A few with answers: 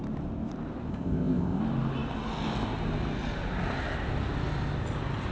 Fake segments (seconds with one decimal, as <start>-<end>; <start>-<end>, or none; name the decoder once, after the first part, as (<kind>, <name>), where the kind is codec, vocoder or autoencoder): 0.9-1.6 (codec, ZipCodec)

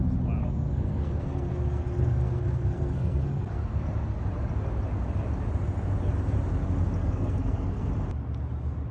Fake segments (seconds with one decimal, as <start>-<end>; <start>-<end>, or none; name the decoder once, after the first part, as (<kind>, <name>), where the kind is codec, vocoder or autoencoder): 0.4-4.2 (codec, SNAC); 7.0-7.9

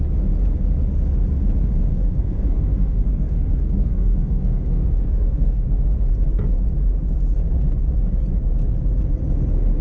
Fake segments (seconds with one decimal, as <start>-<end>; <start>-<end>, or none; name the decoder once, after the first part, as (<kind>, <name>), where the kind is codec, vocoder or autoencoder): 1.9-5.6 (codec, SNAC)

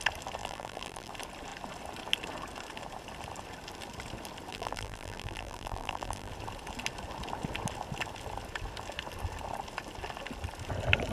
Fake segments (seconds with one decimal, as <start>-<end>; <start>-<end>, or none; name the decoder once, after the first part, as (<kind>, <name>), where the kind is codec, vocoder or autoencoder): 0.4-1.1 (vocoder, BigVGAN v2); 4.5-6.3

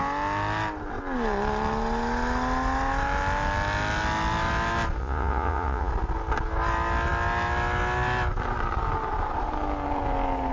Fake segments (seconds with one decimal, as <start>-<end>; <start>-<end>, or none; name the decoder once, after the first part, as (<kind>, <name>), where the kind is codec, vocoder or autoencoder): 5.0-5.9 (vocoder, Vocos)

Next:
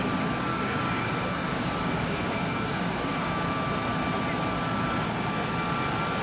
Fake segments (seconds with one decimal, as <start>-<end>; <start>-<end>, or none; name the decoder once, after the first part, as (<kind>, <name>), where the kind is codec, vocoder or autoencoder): 0.5-3.5 (codec, DAC)

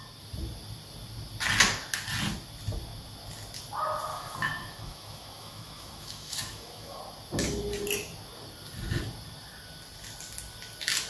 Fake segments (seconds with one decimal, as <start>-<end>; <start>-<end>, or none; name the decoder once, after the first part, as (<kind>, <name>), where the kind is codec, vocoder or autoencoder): 4.1-7.0 (autoencoder, DAC-VAE)